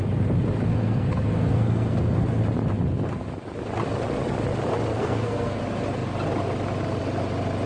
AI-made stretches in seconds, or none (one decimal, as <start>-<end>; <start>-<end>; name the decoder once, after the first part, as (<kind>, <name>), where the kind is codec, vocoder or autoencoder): 0.7-2.4 (codec, SNAC); 4.9-5.6